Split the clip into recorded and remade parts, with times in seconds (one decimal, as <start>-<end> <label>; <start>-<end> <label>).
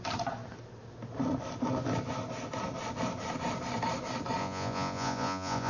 0.0-4.4 recorded; 4.4-5.7 remade